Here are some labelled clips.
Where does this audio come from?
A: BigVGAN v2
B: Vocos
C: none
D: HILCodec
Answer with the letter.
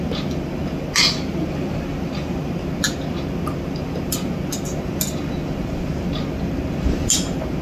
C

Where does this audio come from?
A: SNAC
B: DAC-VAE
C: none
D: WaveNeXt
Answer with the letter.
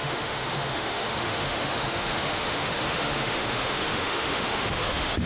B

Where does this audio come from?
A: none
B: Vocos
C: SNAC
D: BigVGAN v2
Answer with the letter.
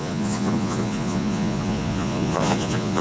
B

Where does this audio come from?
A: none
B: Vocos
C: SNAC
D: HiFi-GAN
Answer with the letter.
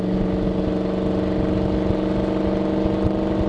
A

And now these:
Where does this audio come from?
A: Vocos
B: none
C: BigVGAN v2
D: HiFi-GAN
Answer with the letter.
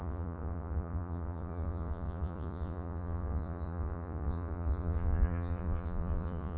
A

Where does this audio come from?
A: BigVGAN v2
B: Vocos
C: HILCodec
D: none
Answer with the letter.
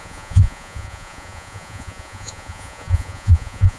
B